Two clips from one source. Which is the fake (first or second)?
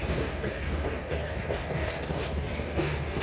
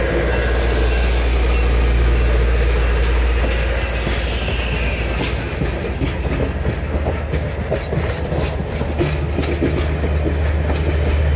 first